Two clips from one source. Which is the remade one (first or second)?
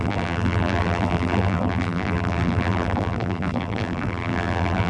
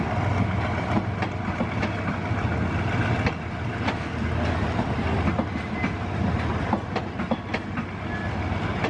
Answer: first